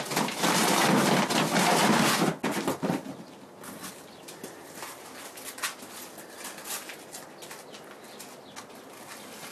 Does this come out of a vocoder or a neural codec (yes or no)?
no